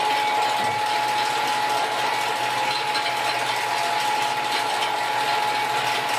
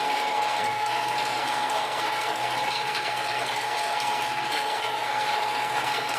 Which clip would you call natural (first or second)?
first